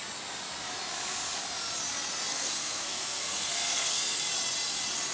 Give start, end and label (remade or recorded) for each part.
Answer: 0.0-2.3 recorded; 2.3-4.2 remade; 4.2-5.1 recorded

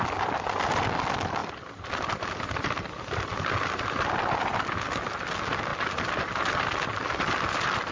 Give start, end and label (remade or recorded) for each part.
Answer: 0.0-7.9 recorded

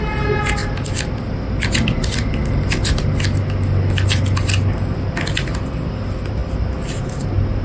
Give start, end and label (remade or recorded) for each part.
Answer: 0.0-7.6 recorded

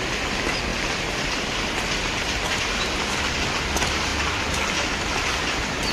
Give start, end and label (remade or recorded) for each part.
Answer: 0.0-5.9 recorded

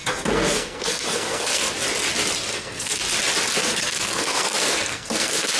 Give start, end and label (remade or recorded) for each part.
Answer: 0.0-1.7 remade; 1.7-2.5 recorded; 2.5-3.0 remade; 3.0-3.6 recorded; 3.6-5.6 remade

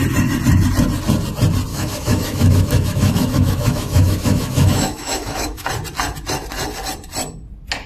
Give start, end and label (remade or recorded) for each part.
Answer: 0.0-1.7 recorded; 1.7-5.7 remade; 5.7-7.9 recorded

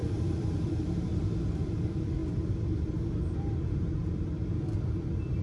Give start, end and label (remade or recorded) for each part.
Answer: 0.0-0.6 remade; 0.6-5.4 recorded

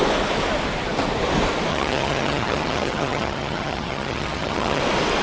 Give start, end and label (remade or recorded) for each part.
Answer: 0.0-1.7 recorded; 1.7-4.8 remade; 4.8-5.2 recorded